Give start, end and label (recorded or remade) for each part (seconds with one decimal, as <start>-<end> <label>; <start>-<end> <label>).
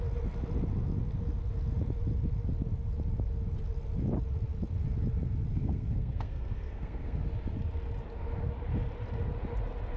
0.0-5.5 recorded; 5.5-7.2 remade; 7.2-10.0 recorded